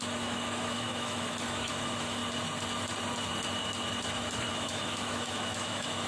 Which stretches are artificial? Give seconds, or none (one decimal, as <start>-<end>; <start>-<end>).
0.0-2.2; 4.1-6.1